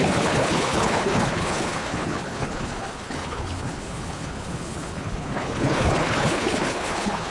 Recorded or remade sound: remade